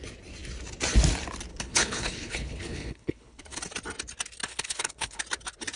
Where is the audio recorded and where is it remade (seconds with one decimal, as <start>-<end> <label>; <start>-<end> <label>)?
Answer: 0.0-1.5 recorded; 1.5-3.6 remade; 3.6-4.5 recorded; 4.5-5.2 remade; 5.2-5.8 recorded